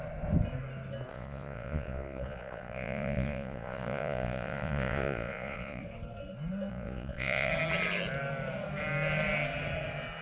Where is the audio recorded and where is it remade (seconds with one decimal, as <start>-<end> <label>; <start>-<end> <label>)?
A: 0.0-1.1 recorded; 1.1-5.8 remade; 5.8-6.7 recorded; 6.7-7.5 remade; 7.5-10.2 recorded